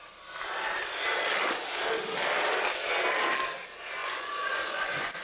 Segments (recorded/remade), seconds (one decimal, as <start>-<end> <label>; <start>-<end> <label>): 0.0-4.0 recorded; 4.0-5.2 remade

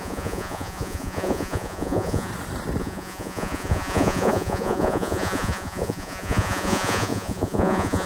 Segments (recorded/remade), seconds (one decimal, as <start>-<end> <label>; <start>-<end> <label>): 0.0-2.3 remade; 2.3-2.8 recorded; 2.8-8.1 remade